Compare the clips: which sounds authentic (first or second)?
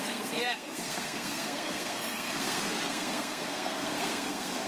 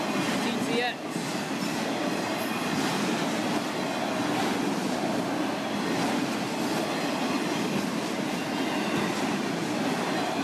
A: second